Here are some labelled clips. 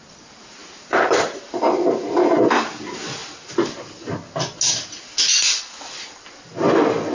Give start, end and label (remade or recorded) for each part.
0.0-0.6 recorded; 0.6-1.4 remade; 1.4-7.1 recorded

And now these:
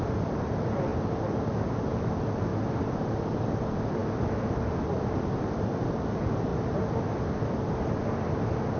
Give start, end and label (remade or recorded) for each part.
0.0-0.9 remade; 0.9-2.0 recorded; 2.0-4.0 remade; 4.0-4.7 recorded; 4.7-6.5 remade; 6.5-7.2 recorded; 7.2-8.8 remade

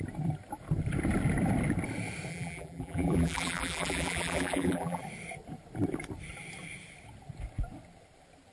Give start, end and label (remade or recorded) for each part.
0.0-2.3 recorded; 2.3-5.0 remade; 5.0-8.5 recorded

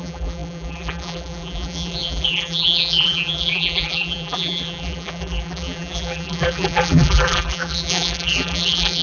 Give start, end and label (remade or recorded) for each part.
0.0-9.0 remade

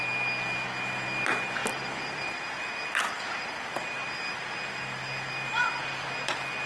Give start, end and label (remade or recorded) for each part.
0.0-1.6 recorded; 1.6-4.4 remade; 4.4-6.7 recorded